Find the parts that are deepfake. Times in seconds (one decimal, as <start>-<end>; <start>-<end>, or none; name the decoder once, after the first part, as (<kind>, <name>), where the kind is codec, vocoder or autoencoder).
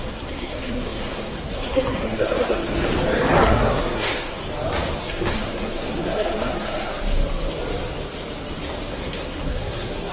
0.0-2.9 (codec, SNAC); 3.4-4.4; 5.0-6.9; 8.9-10.1